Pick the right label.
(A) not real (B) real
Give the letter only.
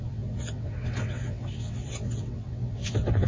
A